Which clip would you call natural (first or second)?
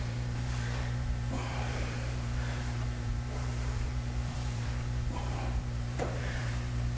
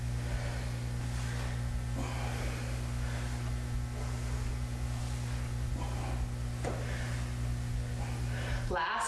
second